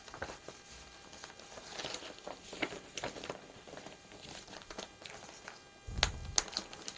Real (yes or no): yes